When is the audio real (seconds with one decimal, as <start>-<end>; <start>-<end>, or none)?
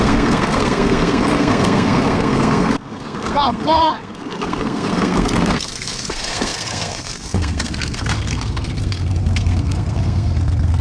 none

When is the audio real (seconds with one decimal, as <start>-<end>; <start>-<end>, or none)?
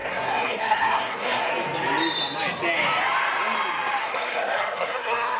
1.5-4.0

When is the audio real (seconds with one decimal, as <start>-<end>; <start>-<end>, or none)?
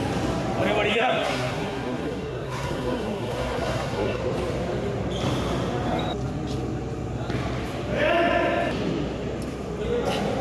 0.0-0.9; 4.2-10.4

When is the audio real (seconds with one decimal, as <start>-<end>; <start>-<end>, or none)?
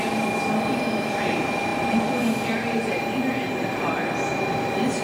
0.0-5.0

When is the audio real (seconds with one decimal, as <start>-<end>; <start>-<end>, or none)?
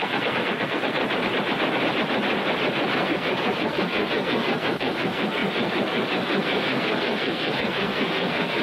1.0-2.9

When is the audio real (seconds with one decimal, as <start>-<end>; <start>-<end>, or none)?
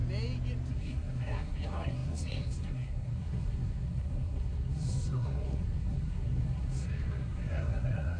0.0-0.7